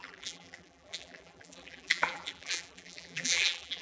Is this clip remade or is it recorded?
remade